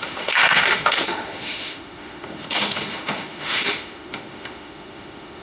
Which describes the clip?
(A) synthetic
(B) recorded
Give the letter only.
A